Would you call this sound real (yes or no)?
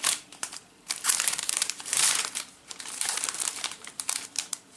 no